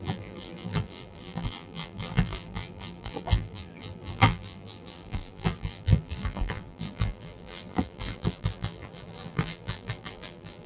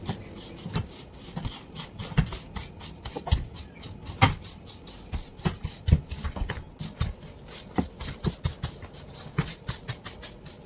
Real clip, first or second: second